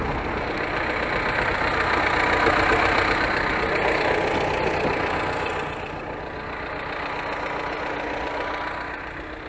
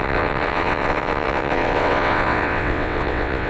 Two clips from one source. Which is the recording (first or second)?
first